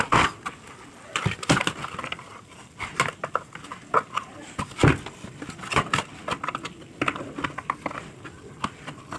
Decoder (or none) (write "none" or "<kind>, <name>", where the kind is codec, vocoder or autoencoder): none